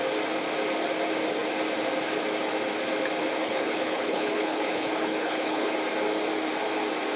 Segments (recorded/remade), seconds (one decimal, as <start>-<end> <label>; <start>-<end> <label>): 0.0-3.4 recorded; 3.4-5.7 remade; 5.7-7.2 recorded